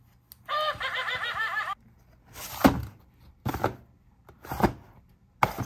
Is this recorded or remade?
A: recorded